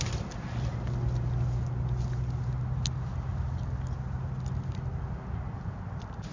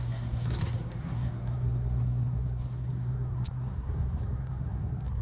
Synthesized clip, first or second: second